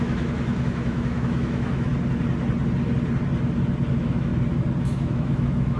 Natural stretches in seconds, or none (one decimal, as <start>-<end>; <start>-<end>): 1.9-3.9; 4.3-4.8